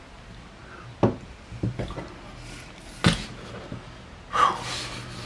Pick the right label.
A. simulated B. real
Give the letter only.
B